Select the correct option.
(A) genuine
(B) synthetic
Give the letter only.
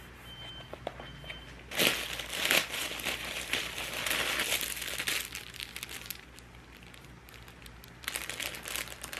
A